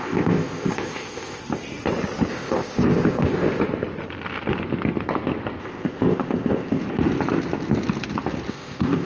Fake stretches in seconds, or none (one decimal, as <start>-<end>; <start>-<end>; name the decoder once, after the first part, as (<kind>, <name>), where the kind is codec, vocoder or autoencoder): 0.0-1.4 (codec, ZipCodec); 2.3-3.6; 5.6-6.8; 8.5-9.1